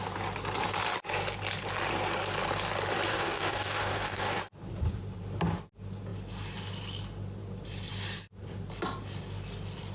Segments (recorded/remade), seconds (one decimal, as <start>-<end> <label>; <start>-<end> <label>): 0.0-3.1 recorded; 3.1-4.4 remade; 4.4-9.9 recorded